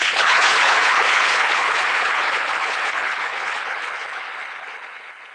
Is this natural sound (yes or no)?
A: no